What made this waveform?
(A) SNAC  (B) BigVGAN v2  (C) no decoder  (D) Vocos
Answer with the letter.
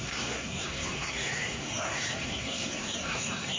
A